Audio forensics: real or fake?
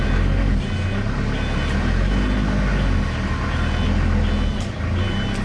real